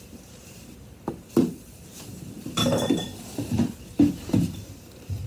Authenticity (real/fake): fake